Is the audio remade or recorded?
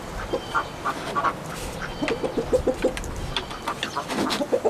recorded